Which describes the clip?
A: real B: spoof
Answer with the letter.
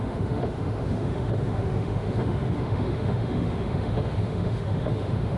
B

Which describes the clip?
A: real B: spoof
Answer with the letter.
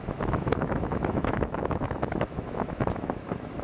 B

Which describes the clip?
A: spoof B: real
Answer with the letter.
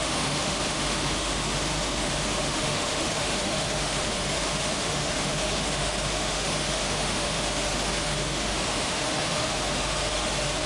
A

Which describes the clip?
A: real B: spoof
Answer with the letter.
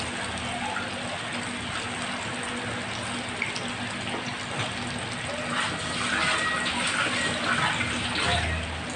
A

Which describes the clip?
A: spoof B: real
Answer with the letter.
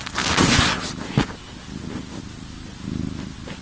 B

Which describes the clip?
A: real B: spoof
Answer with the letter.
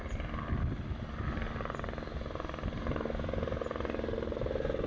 A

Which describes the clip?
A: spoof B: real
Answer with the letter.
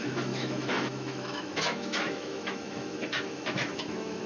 A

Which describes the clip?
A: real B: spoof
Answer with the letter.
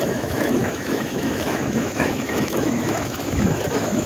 B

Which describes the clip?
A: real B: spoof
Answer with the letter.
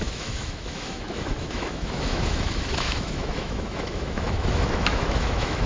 B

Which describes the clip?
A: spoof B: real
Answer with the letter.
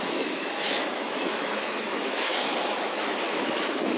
A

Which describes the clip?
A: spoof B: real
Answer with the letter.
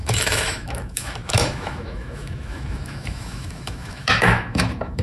A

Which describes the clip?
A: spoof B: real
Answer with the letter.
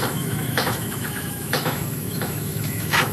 A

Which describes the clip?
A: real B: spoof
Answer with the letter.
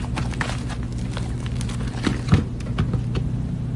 A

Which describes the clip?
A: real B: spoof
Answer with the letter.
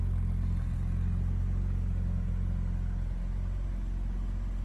A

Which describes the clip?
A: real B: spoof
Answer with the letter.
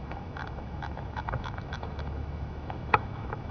B